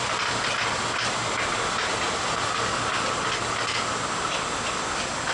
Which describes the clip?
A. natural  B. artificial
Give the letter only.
A